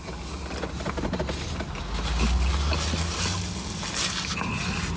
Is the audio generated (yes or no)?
no